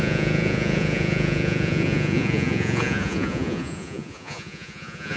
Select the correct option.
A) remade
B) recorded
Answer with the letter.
A